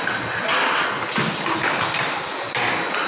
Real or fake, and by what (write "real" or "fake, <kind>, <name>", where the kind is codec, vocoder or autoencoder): real